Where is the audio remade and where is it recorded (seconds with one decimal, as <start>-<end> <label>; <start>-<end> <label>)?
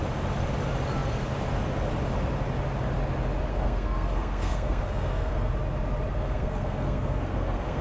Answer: 0.0-3.5 recorded; 3.5-5.5 remade; 5.5-6.1 recorded; 6.1-7.8 remade